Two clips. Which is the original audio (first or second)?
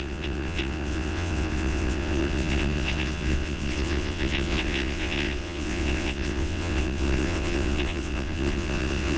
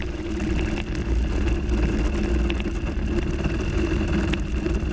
second